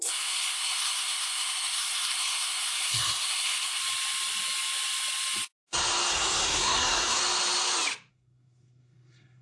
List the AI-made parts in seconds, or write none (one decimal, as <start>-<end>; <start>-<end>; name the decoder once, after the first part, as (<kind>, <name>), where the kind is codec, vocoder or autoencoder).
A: 0.0-3.8 (codec, SNAC); 6.1-7.2; 8.1-9.4